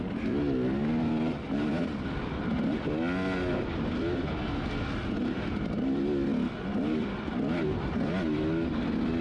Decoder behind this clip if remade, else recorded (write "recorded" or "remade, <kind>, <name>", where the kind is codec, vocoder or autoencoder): recorded